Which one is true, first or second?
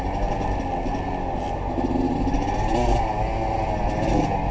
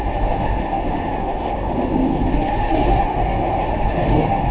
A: first